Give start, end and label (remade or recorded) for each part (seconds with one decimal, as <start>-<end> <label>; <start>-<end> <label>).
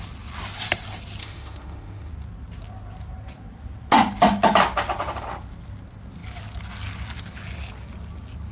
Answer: 0.0-1.2 recorded; 1.2-2.1 remade; 2.1-8.5 recorded